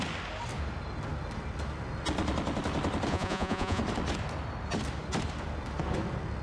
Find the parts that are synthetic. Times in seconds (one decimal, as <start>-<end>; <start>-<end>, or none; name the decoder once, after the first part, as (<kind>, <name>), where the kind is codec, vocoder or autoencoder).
3.1-3.8 (vocoder, Vocos)